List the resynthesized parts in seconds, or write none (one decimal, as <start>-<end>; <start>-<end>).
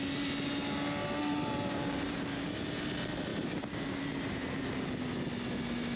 1.0-2.3; 3.3-4.5